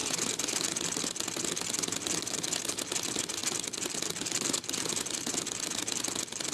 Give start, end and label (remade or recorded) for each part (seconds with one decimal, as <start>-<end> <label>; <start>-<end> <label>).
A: 0.0-6.5 recorded